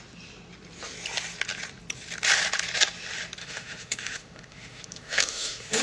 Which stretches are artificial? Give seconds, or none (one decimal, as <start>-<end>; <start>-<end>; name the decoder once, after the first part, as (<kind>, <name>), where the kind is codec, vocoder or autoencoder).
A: 3.4-5.8 (autoencoder, DAC-VAE)

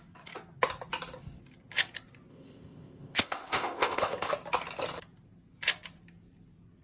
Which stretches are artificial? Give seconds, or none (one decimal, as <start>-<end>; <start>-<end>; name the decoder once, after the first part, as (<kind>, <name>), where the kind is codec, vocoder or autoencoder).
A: 2.3-4.3 (codec, ZipCodec)

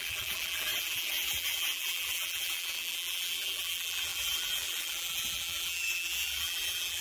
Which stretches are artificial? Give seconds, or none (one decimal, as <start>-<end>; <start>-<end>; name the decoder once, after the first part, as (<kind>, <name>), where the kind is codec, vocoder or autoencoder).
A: 0.0-7.0 (vocoder, BigVGAN v2)

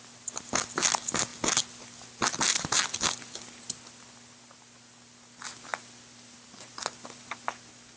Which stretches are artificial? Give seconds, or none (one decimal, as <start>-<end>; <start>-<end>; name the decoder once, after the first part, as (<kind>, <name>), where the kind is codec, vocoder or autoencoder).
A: none

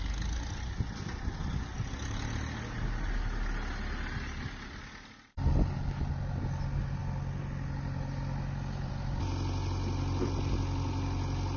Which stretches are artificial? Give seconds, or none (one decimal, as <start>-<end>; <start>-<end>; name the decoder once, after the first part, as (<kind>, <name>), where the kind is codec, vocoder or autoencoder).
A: none

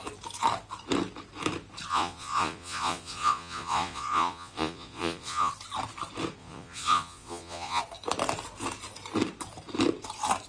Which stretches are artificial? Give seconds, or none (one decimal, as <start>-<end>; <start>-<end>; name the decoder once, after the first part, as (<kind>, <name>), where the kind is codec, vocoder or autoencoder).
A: 1.9-5.5 (vocoder, Vocos); 6.4-7.8

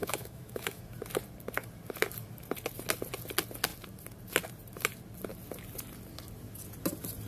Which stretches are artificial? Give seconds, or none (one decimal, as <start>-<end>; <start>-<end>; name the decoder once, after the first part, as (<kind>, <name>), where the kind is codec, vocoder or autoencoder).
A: 0.0-0.8 (autoencoder, DAC-VAE)

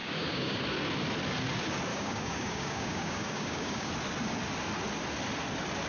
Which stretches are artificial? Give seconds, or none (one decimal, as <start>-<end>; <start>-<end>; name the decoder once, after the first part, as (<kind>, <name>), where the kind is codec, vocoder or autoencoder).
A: 0.0-0.6 (codec, DAC); 1.9-3.9